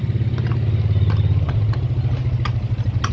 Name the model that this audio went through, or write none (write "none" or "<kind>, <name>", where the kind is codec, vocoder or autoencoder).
none